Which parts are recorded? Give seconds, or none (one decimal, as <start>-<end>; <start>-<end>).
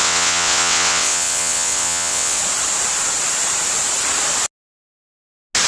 2.4-5.7